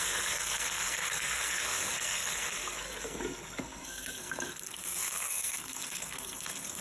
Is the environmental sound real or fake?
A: fake